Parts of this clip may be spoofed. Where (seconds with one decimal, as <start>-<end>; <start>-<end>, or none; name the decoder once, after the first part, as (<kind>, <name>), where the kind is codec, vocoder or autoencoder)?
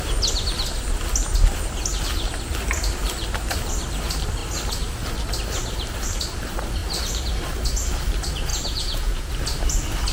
8.5-9.3 (vocoder, Vocos)